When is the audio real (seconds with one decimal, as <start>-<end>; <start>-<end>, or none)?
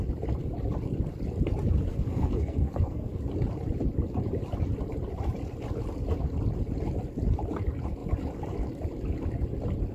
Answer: 0.0-1.9; 3.1-9.9